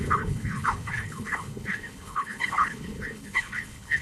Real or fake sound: fake